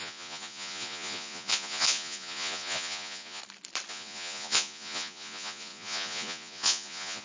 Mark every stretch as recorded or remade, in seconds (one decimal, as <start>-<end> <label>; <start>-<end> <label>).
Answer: 0.0-3.4 remade; 3.4-3.9 recorded; 3.9-7.2 remade